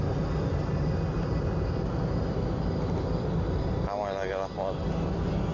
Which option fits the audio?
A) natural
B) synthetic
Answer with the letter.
A